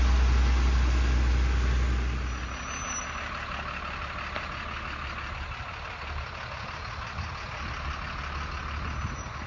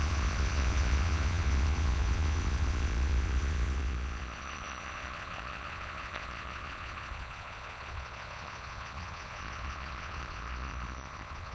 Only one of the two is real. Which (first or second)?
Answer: first